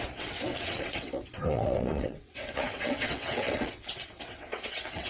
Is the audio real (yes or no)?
no